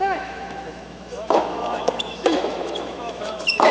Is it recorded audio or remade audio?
remade